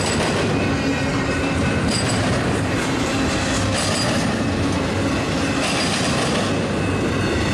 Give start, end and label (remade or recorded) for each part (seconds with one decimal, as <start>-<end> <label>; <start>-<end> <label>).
0.0-1.1 recorded; 1.1-3.3 remade; 3.3-7.5 recorded

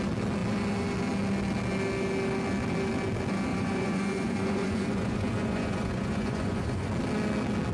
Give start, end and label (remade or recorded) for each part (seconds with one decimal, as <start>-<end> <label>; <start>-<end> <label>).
0.0-3.5 recorded; 3.5-6.9 remade; 6.9-7.7 recorded

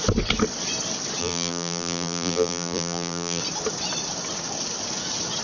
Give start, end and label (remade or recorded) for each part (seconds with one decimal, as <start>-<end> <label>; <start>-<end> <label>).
0.0-1.2 recorded; 1.2-3.4 remade; 3.4-5.4 recorded

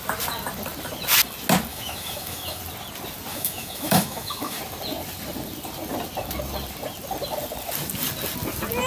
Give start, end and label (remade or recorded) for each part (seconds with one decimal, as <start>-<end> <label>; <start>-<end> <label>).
0.0-1.7 recorded; 1.7-2.6 remade; 2.6-3.3 recorded; 3.3-4.6 remade; 4.6-8.9 recorded

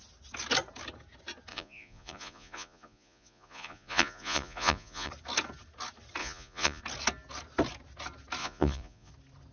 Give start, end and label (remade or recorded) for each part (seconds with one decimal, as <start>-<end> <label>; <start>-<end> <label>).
0.0-1.5 recorded; 1.5-5.1 remade; 5.1-6.2 recorded; 6.2-6.8 remade; 6.8-8.4 recorded; 8.4-9.1 remade; 9.1-9.5 recorded